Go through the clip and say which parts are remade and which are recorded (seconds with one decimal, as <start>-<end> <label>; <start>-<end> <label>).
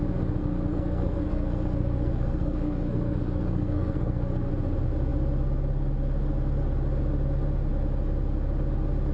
0.0-0.4 recorded; 0.4-4.5 remade; 4.5-9.1 recorded